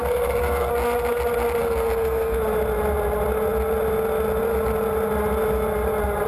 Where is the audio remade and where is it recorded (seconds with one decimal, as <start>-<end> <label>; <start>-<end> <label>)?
0.0-0.7 remade; 0.7-1.6 recorded; 1.6-2.4 remade; 2.4-6.3 recorded